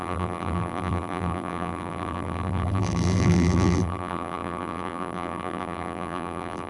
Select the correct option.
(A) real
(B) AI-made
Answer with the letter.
B